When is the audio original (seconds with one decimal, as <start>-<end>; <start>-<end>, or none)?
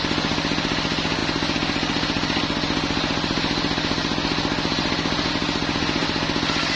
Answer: 0.0-6.8